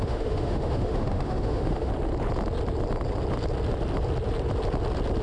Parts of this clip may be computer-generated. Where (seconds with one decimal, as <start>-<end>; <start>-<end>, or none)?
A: 0.0-1.9